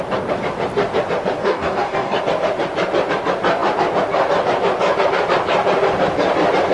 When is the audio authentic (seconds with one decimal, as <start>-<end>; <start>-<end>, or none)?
0.0-1.4; 2.2-6.7